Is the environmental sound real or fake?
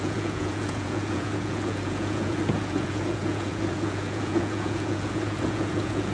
fake